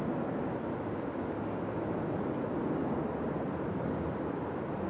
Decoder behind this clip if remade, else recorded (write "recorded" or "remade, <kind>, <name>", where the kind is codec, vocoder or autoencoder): recorded